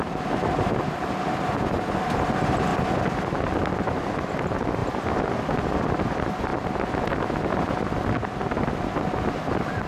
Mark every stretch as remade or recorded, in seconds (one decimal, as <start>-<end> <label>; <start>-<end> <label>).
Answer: 0.0-9.9 recorded